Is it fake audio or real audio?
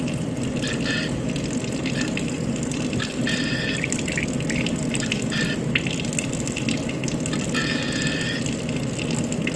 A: real